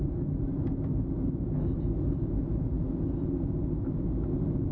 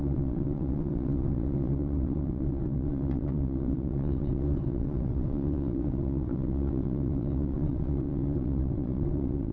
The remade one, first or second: second